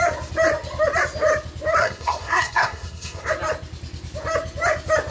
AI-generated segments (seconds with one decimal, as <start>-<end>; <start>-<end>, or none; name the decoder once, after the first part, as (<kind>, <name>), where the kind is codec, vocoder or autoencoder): 1.8-3.3 (codec, SNAC)